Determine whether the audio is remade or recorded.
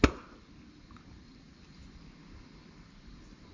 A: recorded